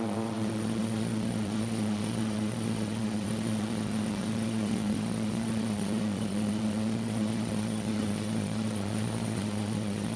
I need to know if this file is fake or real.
fake